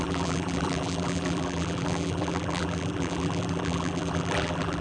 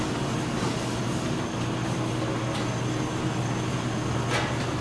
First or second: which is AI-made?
first